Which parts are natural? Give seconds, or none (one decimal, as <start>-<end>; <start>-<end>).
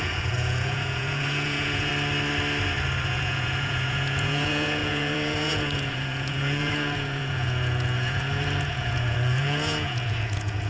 1.9-3.0